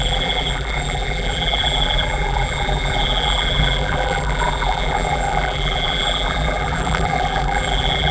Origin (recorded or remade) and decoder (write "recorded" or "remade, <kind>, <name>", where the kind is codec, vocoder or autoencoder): remade, vocoder, BigVGAN v2